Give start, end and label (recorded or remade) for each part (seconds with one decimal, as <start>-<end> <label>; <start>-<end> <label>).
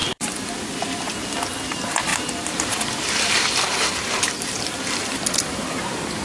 0.0-0.5 remade; 0.5-2.1 recorded; 2.1-5.8 remade; 5.8-6.2 recorded